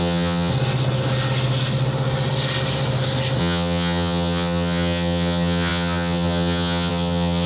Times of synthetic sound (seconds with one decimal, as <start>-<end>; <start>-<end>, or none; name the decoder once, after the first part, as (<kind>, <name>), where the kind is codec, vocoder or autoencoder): 0.0-0.5 (vocoder, HiFi-GAN); 3.4-7.5